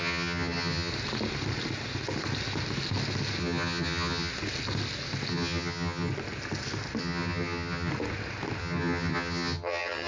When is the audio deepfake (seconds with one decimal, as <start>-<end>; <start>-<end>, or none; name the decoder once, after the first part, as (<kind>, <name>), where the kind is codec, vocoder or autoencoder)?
0.0-0.9 (vocoder, HiFi-GAN); 3.4-4.3; 5.3-6.1; 7.0-7.9; 8.6-10.1